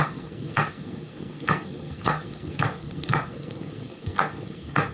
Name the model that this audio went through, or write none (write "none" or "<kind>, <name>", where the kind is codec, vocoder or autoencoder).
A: codec, SNAC